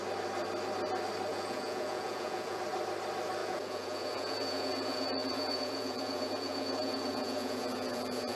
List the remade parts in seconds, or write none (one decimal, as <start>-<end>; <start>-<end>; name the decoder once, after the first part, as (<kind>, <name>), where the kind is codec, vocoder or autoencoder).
1.3-2.6 (vocoder, Vocos); 3.4-8.4